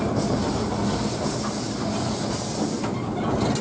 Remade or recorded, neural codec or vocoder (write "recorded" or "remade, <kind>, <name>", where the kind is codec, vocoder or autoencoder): recorded